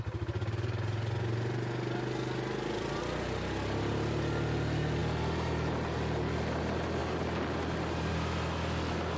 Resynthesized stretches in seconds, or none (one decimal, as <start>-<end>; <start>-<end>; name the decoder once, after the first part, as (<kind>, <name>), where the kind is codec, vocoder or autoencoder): none